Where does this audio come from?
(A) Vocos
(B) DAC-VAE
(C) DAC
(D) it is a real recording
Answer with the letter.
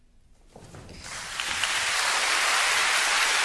D